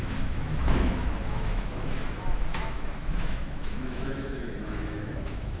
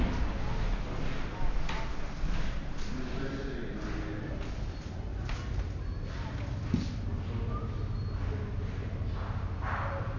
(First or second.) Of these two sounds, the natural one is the second